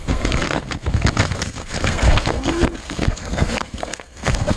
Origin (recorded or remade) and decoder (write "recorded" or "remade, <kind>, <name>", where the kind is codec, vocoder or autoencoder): remade, codec, SNAC